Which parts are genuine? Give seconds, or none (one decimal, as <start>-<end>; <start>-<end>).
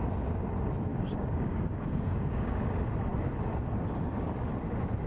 0.0-0.9; 2.5-5.1